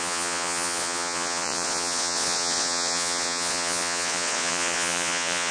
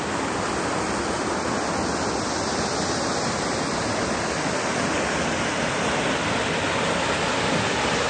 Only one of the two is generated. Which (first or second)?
first